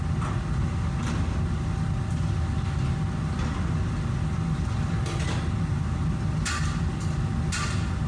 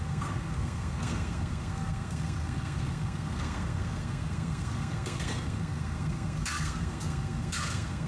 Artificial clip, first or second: second